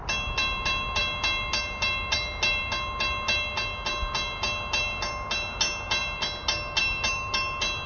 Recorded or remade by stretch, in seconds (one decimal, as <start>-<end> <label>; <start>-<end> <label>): 0.0-7.9 recorded

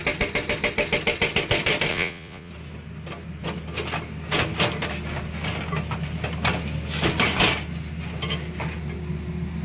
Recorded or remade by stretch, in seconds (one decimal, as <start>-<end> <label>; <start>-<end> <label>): 0.0-1.9 recorded; 1.9-2.5 remade; 2.5-9.6 recorded